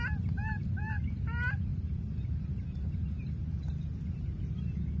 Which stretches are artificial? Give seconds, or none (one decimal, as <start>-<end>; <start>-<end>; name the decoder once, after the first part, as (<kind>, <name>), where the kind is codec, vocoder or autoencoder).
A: none